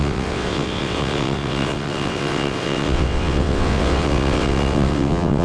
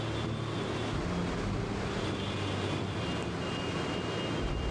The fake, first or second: first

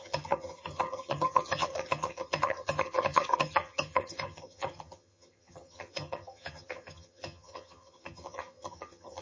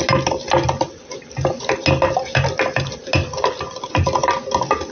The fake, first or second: first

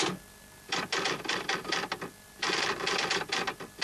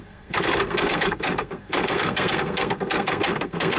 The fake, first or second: second